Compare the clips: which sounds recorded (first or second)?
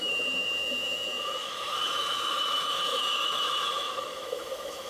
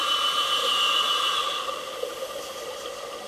second